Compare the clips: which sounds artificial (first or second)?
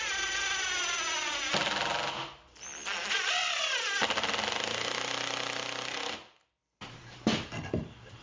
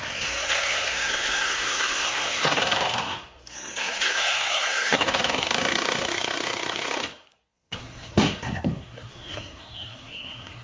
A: second